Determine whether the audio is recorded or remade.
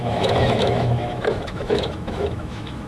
remade